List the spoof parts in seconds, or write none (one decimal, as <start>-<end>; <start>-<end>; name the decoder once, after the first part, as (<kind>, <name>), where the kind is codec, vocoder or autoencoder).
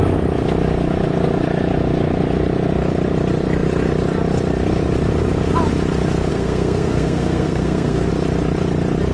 6.3-8.1 (codec, SNAC)